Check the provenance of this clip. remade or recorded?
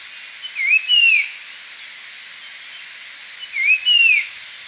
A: recorded